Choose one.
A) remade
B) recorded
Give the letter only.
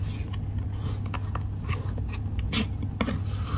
B